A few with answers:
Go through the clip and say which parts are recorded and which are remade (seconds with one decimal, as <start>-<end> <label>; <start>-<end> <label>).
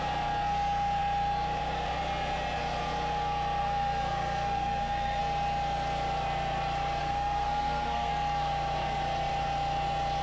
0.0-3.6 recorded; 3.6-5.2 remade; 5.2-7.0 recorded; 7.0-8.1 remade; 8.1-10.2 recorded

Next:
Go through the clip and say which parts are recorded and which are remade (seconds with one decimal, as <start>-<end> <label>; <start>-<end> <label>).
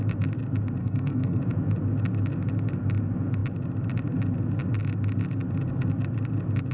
0.0-0.8 recorded; 0.8-1.4 remade; 1.4-6.7 recorded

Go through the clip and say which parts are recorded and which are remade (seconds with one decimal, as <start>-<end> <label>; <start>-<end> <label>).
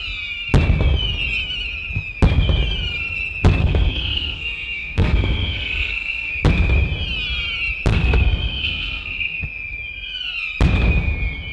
0.0-3.6 recorded; 3.6-6.4 remade; 6.4-7.9 recorded; 7.9-9.4 remade; 9.4-11.5 recorded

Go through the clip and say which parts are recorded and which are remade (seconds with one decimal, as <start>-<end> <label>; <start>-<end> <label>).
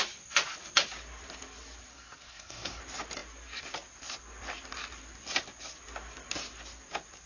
0.0-1.9 recorded; 1.9-2.8 remade; 2.8-7.3 recorded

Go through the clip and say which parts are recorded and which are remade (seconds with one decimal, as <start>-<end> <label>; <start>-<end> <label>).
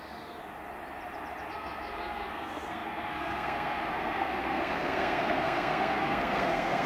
0.0-0.4 remade; 0.4-1.5 recorded; 1.5-6.9 remade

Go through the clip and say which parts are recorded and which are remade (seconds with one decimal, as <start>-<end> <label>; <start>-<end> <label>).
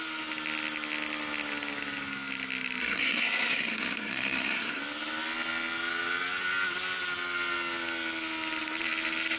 0.0-2.8 recorded; 2.8-4.8 remade; 4.8-9.4 recorded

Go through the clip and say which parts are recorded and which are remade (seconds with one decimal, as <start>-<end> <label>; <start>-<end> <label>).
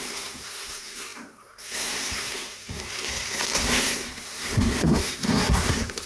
0.0-6.1 remade